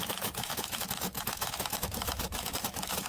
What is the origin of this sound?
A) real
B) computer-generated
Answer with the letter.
B